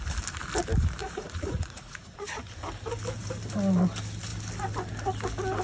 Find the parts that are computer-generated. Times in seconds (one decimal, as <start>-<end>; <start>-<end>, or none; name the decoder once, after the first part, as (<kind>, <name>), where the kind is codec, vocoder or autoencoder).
1.0-2.4 (vocoder, Vocos)

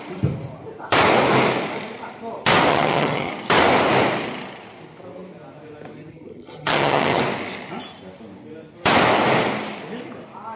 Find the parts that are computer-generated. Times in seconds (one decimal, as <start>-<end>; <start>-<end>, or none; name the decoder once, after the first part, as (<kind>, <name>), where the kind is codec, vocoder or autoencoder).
2.7-3.3 (vocoder, HiFi-GAN); 6.1-7.2

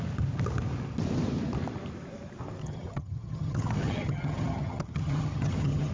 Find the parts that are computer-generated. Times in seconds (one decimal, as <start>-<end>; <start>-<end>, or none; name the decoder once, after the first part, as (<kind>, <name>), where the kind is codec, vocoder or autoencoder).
2.6-5.9 (vocoder, HiFi-GAN)